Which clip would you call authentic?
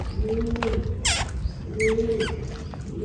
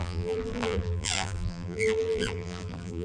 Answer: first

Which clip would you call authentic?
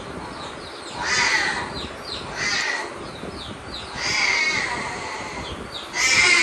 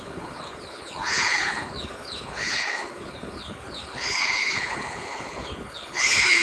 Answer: first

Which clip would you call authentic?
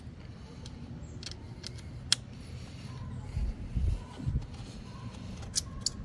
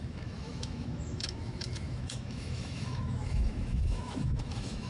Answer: first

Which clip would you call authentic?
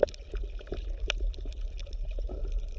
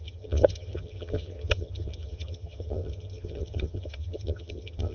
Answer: first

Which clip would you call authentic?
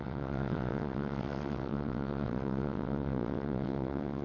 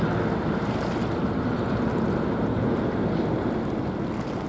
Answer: second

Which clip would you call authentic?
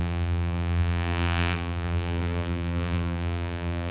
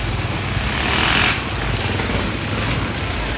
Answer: second